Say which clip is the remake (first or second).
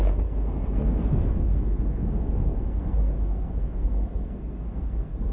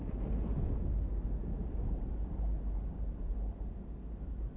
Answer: first